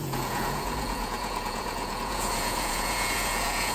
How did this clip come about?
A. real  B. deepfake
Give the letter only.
B